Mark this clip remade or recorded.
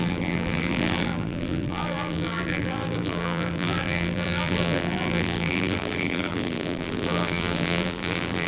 remade